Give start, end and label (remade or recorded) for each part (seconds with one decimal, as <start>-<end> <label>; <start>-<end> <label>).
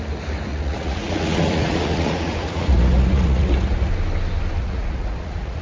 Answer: 0.0-0.5 recorded; 0.5-3.9 remade; 3.9-4.6 recorded; 4.6-5.6 remade